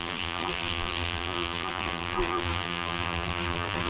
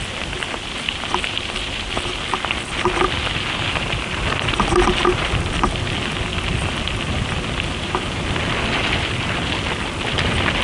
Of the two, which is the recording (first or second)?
second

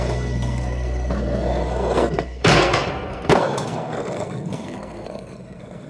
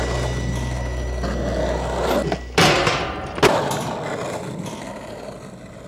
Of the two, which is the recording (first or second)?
second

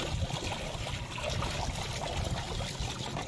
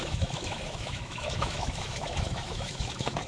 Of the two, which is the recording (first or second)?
first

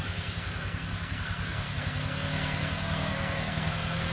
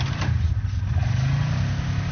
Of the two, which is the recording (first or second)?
second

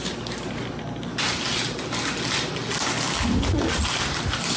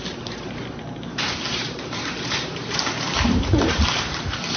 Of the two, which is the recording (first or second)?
first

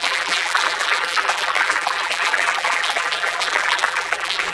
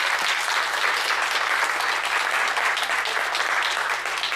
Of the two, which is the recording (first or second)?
second